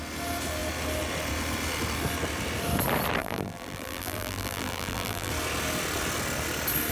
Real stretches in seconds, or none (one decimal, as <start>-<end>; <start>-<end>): 0.0-3.2; 5.3-6.9